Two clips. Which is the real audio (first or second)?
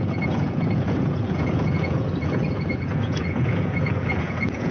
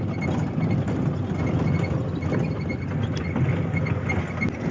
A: second